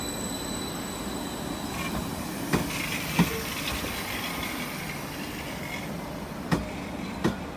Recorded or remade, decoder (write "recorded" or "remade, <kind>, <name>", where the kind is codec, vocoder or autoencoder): recorded